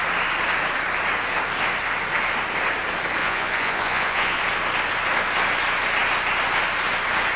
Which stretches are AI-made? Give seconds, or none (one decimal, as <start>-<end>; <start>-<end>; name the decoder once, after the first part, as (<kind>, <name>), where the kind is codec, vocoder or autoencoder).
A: 3.2-4.4 (vocoder, Vocos)

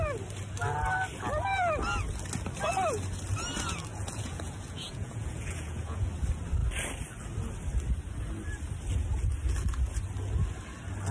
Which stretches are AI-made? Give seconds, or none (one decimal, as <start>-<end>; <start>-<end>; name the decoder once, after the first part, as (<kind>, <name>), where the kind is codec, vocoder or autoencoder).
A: 3.9-6.1 (vocoder, Vocos)